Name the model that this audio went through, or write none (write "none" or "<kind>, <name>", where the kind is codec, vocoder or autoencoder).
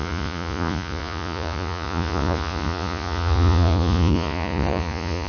vocoder, Vocos